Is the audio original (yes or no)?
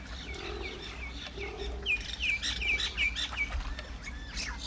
yes